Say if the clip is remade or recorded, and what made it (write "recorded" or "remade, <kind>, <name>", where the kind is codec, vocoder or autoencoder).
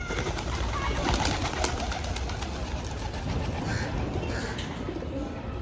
recorded